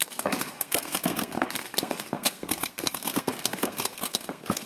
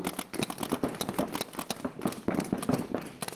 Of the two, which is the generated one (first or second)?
first